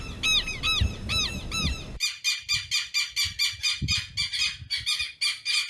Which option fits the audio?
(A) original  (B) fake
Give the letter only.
A